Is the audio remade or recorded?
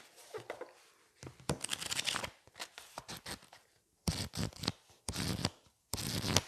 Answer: recorded